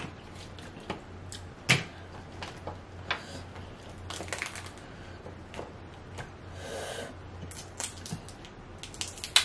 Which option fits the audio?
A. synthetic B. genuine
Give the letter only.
B